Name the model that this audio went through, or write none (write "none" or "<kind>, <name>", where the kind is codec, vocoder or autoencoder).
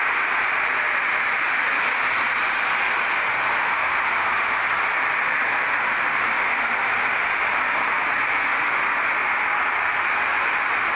none